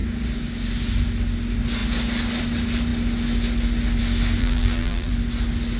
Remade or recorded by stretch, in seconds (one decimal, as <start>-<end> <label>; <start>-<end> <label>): 0.0-4.4 recorded; 4.4-5.1 remade; 5.1-5.8 recorded